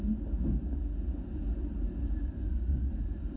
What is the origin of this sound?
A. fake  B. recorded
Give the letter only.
B